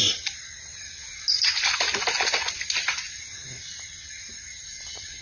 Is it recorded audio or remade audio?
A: recorded